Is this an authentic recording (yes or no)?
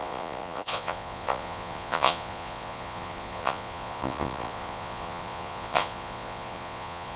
no